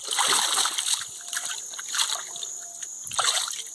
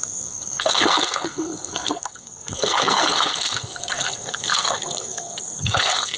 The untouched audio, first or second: first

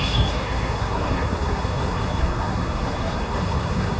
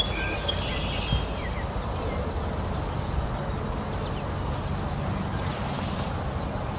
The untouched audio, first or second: second